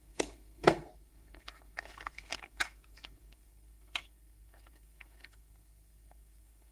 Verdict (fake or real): fake